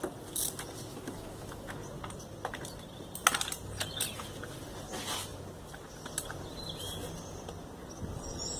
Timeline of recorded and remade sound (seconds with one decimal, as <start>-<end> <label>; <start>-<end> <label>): 0.0-0.9 recorded; 0.9-1.7 remade; 1.7-8.6 recorded